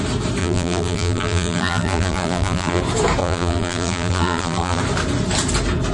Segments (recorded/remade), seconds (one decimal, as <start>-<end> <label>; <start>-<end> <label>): 0.0-0.4 recorded; 0.4-2.8 remade; 2.8-3.2 recorded; 3.2-4.8 remade; 4.8-5.9 recorded